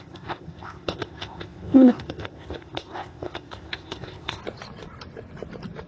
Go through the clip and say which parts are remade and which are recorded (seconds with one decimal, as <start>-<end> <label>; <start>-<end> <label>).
0.0-4.4 remade; 4.4-5.9 recorded